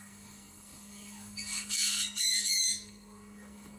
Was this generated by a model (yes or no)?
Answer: yes